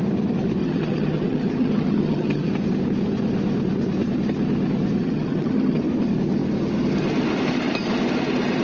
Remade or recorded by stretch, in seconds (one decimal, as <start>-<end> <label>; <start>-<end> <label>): 0.0-0.6 recorded; 0.6-2.5 remade; 2.5-5.0 recorded; 5.0-5.8 remade; 5.8-8.6 recorded